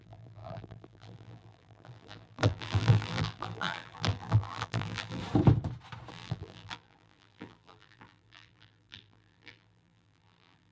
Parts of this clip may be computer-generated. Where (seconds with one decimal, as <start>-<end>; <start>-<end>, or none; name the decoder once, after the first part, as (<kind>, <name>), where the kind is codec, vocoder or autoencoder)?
0.0-5.2 (vocoder, BigVGAN v2); 6.1-10.7